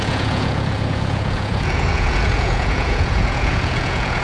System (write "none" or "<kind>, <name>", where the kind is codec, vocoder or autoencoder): vocoder, Vocos